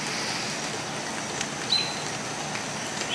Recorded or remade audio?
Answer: recorded